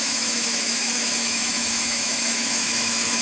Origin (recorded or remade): remade